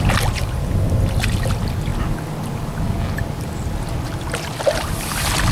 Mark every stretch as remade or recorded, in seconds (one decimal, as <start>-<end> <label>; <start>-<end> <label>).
0.0-5.5 recorded